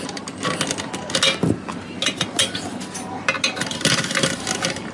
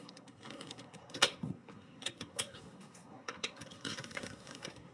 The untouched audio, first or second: first